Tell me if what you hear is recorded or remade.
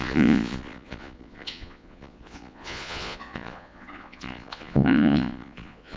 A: remade